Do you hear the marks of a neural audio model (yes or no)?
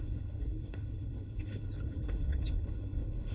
yes